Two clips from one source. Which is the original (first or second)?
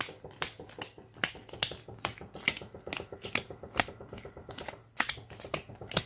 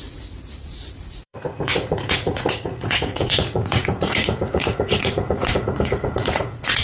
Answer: first